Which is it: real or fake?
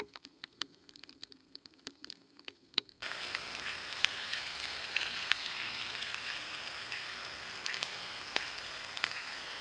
fake